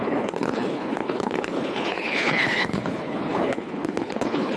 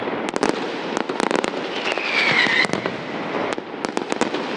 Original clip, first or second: second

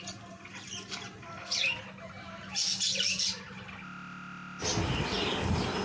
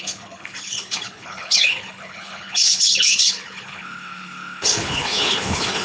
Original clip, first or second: first